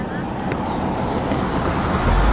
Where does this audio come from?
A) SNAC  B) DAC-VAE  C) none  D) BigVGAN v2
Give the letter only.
C